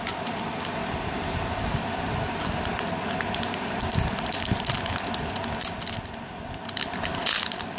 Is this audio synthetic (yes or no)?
no